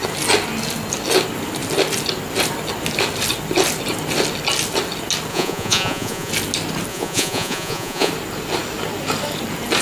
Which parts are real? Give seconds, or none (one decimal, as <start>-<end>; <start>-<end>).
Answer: 0.0-5.3; 6.3-6.9; 8.1-9.8

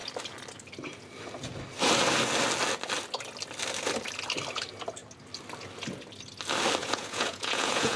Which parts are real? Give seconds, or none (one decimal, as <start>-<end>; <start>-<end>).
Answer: 0.0-6.8

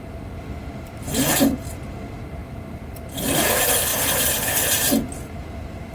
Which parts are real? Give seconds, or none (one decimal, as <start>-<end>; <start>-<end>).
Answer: 0.0-5.9

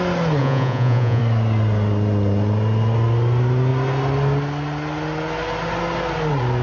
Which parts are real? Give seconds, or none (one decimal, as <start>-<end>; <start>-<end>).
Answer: 0.0-0.4; 1.2-6.6

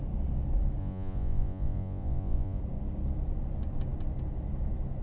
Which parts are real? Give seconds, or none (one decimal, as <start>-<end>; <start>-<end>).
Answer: 0.0-0.8; 2.6-5.0

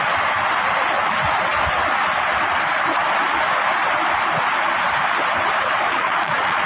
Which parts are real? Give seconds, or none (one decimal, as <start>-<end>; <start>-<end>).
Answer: 0.0-5.9